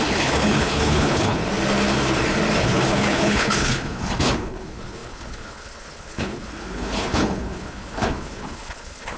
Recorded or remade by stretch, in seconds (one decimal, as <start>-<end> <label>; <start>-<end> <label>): 0.0-1.4 remade; 1.4-2.6 recorded; 2.6-9.2 remade